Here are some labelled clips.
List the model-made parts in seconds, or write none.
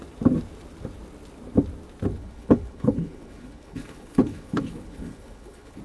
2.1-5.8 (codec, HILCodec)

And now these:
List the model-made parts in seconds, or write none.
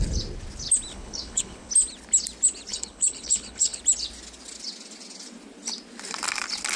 0.9-1.7 (codec, HILCodec); 2.7-3.8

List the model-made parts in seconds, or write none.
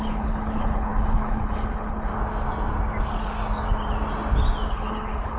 0.0-2.1 (codec, HILCodec); 4.7-5.4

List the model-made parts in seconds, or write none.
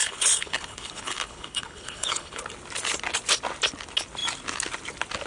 0.0-2.4 (codec, HILCodec)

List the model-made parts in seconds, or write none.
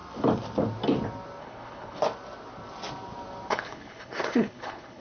1.4-2.0 (codec, HILCodec); 3.5-5.0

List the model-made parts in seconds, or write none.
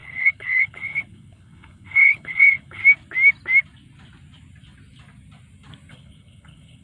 0.0-2.8 (codec, HILCodec); 5.9-6.8